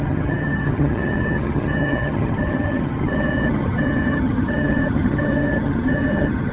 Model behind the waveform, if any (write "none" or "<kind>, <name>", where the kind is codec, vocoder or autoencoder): vocoder, HiFi-GAN